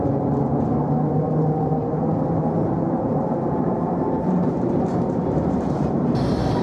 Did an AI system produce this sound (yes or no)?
yes